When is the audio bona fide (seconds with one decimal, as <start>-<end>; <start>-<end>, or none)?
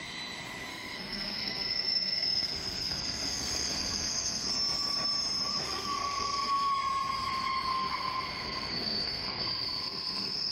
0.0-0.7; 4.5-5.5; 6.7-7.7